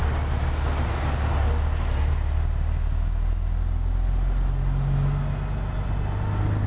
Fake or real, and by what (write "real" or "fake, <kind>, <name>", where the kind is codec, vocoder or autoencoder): real